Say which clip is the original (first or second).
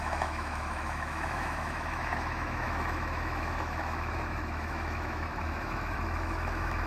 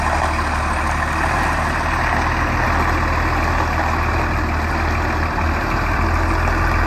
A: second